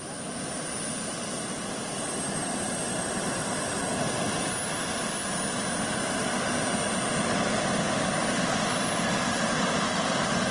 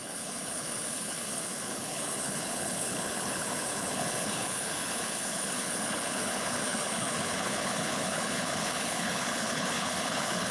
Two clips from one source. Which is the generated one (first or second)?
second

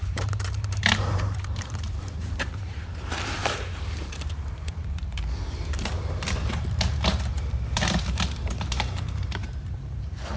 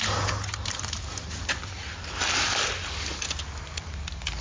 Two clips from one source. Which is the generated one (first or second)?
first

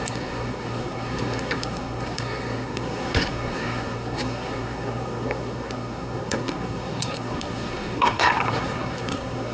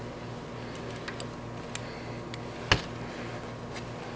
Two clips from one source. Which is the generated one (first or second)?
first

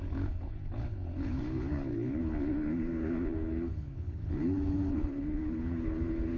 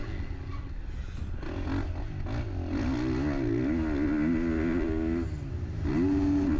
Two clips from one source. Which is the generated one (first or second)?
first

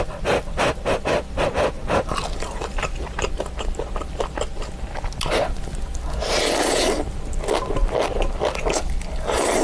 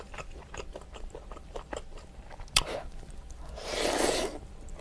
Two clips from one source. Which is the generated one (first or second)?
second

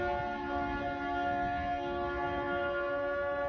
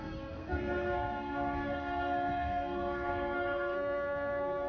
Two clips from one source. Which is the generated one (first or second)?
second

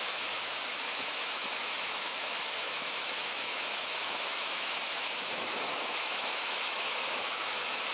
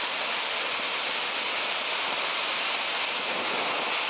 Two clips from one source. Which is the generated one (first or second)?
first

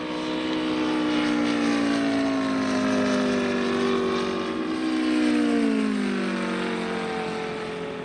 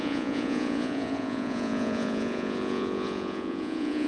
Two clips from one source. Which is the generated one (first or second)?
second